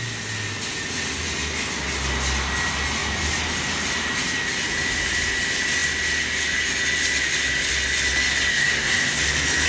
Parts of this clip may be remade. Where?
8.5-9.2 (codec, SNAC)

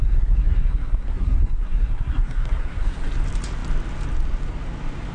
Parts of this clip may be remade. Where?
0.0-3.1 (codec, SNAC)

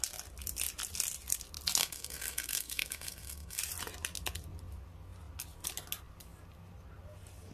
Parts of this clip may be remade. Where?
1.8-3.6 (codec, SNAC)